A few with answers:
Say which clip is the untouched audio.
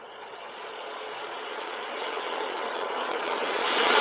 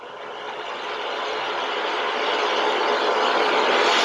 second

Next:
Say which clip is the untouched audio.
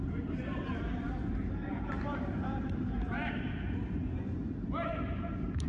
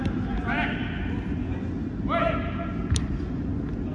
second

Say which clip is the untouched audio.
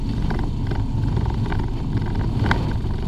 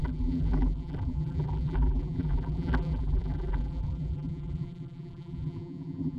first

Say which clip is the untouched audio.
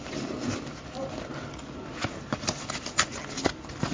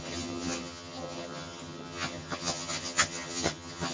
first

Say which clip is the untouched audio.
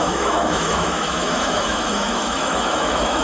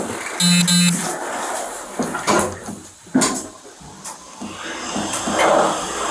second